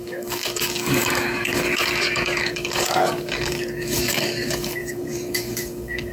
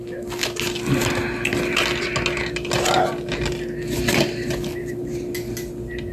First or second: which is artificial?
first